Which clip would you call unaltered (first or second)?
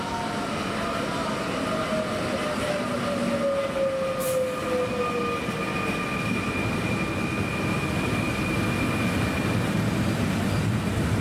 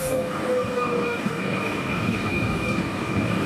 first